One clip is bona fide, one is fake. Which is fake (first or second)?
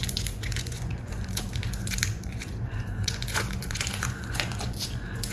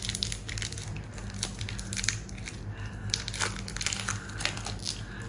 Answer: first